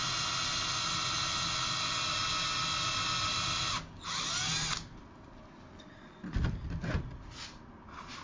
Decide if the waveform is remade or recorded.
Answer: recorded